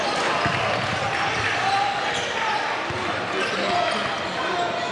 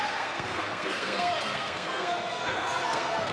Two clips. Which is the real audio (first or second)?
first